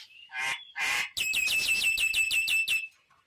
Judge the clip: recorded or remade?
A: remade